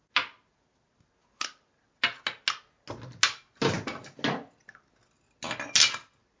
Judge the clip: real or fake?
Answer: real